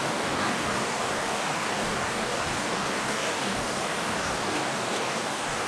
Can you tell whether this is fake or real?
fake